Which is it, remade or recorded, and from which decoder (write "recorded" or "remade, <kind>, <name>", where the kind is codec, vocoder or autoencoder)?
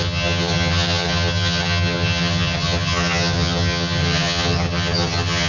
remade, vocoder, HiFi-GAN